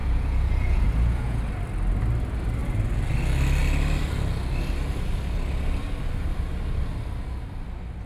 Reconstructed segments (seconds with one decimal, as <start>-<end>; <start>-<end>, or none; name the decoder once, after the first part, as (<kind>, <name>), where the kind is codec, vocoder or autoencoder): 0.0-1.4 (vocoder, Vocos)